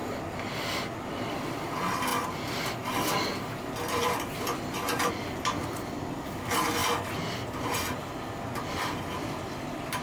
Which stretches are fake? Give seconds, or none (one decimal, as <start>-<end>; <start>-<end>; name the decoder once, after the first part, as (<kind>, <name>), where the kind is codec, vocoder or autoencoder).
1.3-2.1 (vocoder, BigVGAN v2); 5.1-6.8; 8.7-10.0

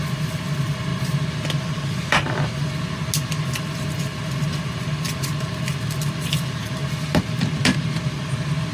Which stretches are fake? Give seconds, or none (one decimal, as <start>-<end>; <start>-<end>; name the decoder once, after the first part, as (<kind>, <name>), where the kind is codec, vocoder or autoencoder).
none

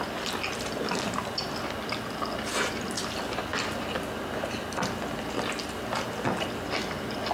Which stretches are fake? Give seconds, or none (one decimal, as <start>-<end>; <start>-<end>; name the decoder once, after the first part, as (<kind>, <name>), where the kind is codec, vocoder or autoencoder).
none

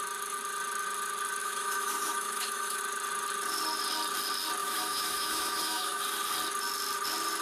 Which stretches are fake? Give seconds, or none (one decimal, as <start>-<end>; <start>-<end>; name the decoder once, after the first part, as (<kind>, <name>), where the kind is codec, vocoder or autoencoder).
1.4-2.8 (autoencoder, DAC-VAE); 4.6-6.0

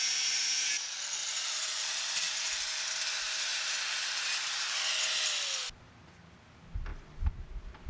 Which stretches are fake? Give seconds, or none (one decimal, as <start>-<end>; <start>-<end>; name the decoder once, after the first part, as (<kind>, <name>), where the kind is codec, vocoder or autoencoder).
1.2-2.6 (vocoder, BigVGAN v2)

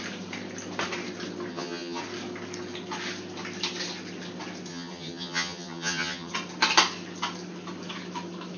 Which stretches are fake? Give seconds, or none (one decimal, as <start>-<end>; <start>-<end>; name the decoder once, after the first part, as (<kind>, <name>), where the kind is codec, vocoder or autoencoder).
1.5-2.0 (vocoder, HiFi-GAN); 4.7-6.3

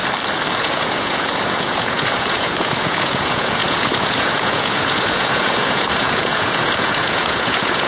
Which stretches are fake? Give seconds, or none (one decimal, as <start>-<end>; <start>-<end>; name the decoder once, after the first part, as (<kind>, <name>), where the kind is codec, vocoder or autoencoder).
0.6-7.9 (vocoder, Vocos)

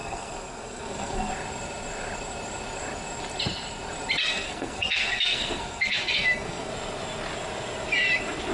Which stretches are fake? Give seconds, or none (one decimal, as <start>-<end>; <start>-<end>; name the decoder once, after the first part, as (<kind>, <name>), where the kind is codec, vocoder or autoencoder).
0.0-1.3 (codec, SNAC); 4.2-6.7